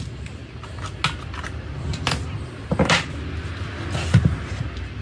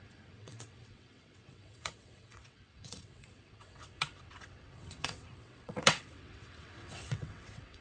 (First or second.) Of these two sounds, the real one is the first